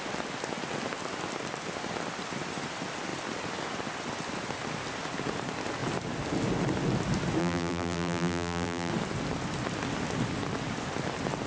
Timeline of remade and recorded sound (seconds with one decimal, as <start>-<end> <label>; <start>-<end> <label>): 0.0-7.4 recorded; 7.4-8.9 remade; 8.9-11.5 recorded